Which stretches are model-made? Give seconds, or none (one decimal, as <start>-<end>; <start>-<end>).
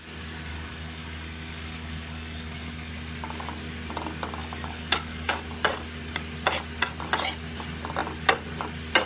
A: 0.5-2.9; 4.4-5.3